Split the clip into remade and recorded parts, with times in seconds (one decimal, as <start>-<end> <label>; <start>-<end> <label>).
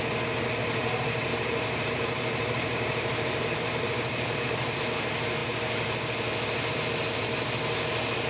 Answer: 0.0-0.6 recorded; 0.6-4.8 remade; 4.8-8.3 recorded